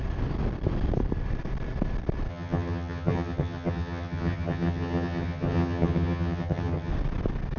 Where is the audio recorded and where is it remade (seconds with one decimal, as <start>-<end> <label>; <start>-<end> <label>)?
0.0-2.3 recorded; 2.3-6.9 remade; 6.9-7.6 recorded